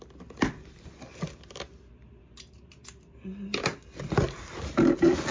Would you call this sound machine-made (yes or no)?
no